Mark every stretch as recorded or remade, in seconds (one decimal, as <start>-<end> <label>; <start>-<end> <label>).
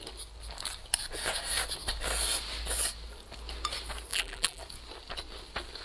0.0-4.1 recorded; 4.1-4.6 remade; 4.6-5.8 recorded